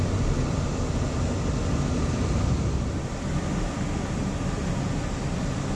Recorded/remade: recorded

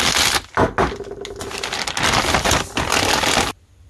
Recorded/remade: recorded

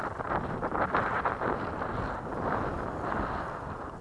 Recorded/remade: recorded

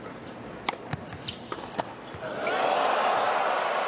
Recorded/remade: recorded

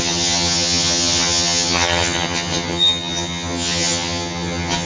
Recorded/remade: remade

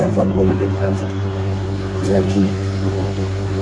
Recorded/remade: remade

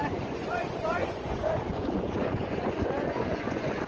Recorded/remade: remade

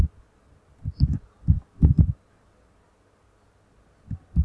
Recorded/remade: recorded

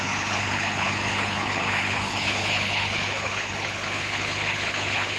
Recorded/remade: remade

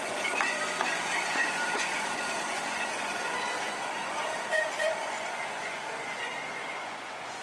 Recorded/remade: remade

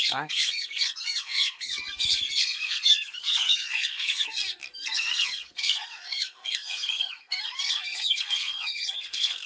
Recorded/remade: remade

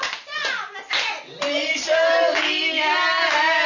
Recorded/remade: recorded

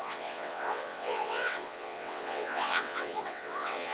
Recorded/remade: remade